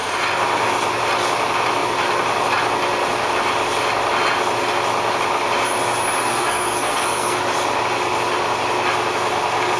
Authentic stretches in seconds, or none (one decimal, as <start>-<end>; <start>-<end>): 0.0-6.2; 7.4-9.8